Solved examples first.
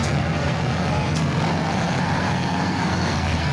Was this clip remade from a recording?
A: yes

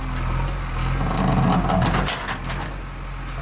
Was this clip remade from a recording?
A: no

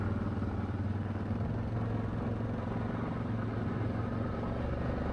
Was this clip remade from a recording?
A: no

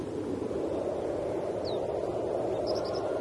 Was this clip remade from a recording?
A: no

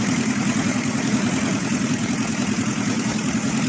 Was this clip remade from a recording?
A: yes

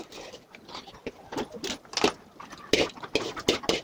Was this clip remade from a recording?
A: no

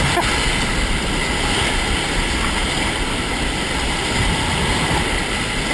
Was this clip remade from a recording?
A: no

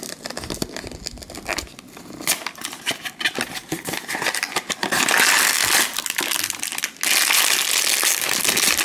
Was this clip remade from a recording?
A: no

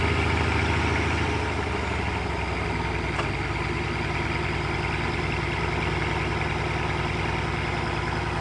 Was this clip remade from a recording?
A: no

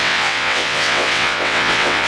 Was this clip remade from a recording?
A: yes